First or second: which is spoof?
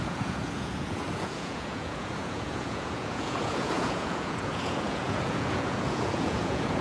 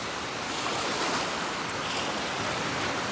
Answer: first